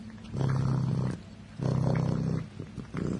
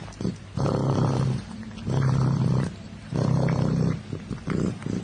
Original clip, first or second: first